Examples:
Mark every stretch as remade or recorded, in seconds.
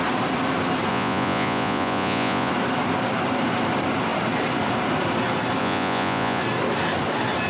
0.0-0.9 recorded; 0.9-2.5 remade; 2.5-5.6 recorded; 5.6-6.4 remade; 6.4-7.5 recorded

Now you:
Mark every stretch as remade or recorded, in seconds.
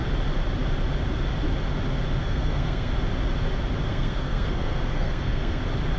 0.0-2.2 recorded; 2.2-2.9 remade; 2.9-3.9 recorded; 3.9-5.6 remade; 5.6-6.0 recorded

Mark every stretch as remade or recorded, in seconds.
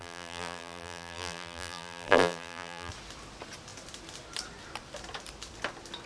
0.0-2.9 remade; 2.9-6.1 recorded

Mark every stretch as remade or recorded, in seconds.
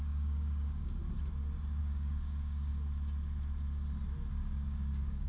0.0-1.0 remade; 1.0-1.8 recorded; 1.8-2.7 remade; 2.7-4.4 recorded; 4.4-5.3 remade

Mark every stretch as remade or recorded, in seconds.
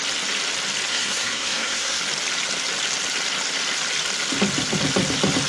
0.0-0.9 recorded; 0.9-2.0 remade; 2.0-5.5 recorded